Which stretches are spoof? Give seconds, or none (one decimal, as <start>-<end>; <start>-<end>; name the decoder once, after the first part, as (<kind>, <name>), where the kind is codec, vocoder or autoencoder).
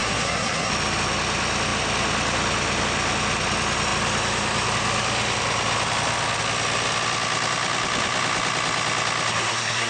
0.0-0.7 (codec, SNAC); 9.3-9.9